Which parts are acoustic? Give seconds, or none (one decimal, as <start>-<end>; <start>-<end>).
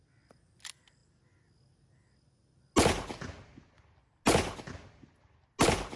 0.0-6.0